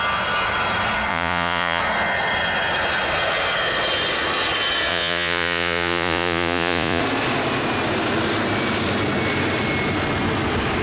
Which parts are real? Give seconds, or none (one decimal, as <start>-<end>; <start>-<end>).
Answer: 0.0-1.1; 1.8-4.9; 7.0-10.8